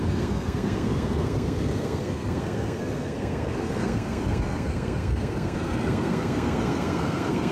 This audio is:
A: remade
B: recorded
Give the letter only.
A